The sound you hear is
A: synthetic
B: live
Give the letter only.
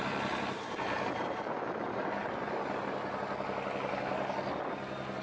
B